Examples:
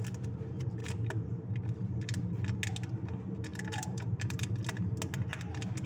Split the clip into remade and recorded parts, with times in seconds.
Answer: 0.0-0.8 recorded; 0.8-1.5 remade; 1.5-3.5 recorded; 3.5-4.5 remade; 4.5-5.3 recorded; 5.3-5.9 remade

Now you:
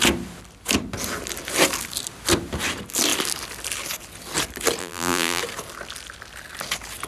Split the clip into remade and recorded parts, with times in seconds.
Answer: 0.0-4.8 recorded; 4.8-5.4 remade; 5.4-7.1 recorded

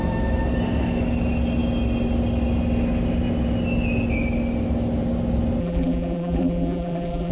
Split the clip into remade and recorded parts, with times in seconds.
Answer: 0.0-5.6 recorded; 5.6-7.3 remade

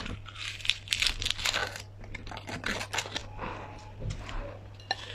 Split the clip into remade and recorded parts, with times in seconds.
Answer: 0.0-5.1 recorded

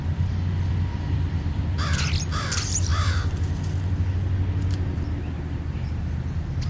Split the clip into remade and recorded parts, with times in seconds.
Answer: 0.0-2.9 remade; 2.9-5.7 recorded; 5.7-6.7 remade

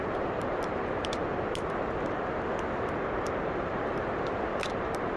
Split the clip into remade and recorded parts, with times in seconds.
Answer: 0.0-1.2 remade; 1.2-3.3 recorded; 3.3-5.2 remade